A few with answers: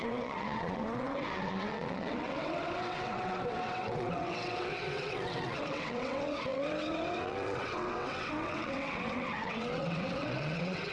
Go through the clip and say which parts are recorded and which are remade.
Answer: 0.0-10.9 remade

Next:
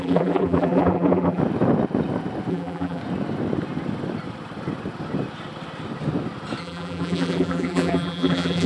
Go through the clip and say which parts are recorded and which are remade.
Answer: 0.0-1.4 remade; 1.4-2.5 recorded; 2.5-3.0 remade; 3.0-6.6 recorded; 6.6-8.7 remade